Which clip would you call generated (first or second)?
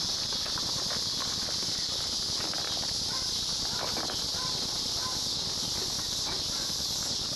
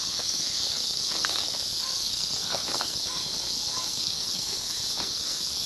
second